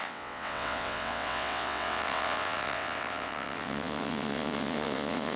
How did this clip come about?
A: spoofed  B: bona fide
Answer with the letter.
A